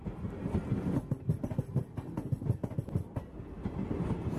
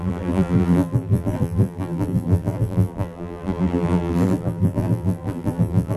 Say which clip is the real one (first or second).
first